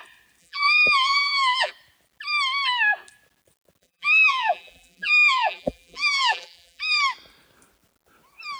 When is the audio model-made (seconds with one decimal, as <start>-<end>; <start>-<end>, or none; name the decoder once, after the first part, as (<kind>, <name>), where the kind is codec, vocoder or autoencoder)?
0.4-1.7 (vocoder, BigVGAN v2); 3.8-6.8